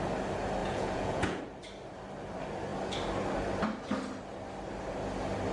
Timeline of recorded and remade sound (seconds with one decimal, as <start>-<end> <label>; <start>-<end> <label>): 0.0-0.6 recorded; 0.6-1.4 remade; 1.4-5.5 recorded